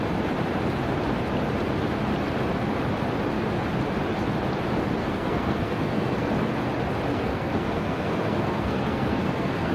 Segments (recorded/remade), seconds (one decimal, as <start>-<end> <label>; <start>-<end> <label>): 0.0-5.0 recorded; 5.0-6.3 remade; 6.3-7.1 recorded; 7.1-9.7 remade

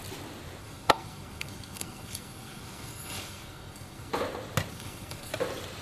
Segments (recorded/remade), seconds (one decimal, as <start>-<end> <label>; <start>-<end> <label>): 0.0-0.6 recorded; 0.6-4.1 remade; 4.1-4.7 recorded; 4.7-5.3 remade; 5.3-5.8 recorded

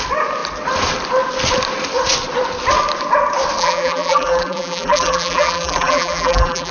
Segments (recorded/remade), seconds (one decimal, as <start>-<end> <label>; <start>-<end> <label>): 0.0-3.6 recorded; 3.6-6.7 remade